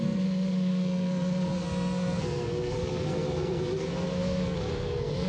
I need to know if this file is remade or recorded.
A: remade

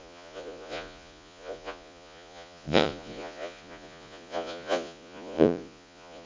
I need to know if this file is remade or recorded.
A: remade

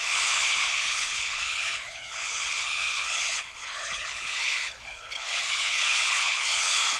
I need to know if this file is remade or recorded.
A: remade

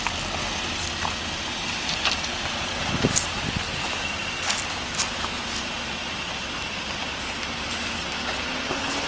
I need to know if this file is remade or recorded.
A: recorded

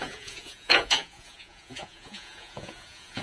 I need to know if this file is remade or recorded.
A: remade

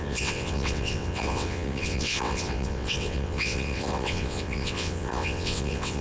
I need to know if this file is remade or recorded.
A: remade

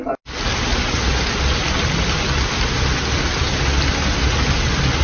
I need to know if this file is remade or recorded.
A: recorded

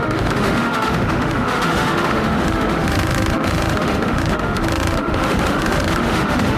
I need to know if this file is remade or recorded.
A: remade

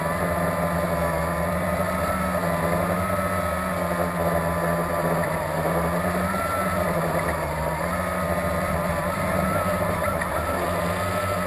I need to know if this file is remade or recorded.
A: recorded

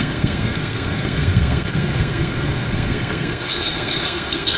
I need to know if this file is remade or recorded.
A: remade